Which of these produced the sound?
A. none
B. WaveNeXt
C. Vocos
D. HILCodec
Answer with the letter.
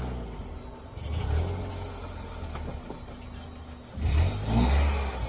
A